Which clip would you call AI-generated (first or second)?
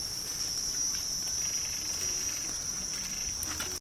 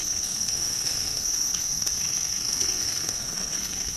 second